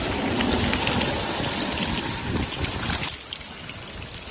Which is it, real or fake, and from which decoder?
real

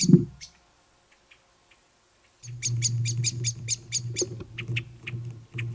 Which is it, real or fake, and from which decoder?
real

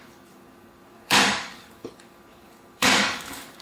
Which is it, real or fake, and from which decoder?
fake, codec, DAC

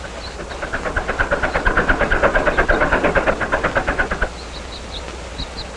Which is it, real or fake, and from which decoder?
real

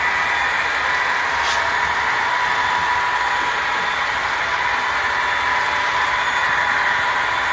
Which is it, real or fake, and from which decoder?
real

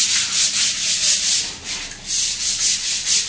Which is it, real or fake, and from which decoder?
real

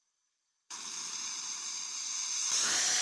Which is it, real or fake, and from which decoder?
real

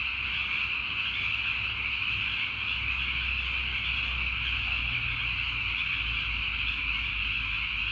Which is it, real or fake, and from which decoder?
real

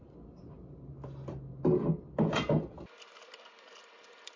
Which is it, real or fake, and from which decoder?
real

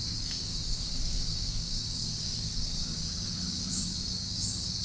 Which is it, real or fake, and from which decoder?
fake, codec, DAC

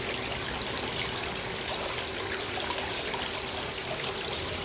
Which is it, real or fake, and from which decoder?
real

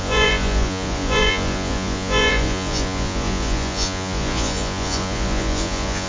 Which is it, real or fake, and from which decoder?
fake, vocoder, Vocos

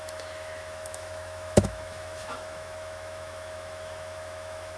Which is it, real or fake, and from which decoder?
fake, autoencoder, DAC-VAE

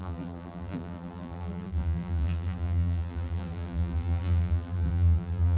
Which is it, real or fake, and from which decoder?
fake, vocoder, BigVGAN v2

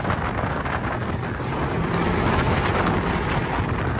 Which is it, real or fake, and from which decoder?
real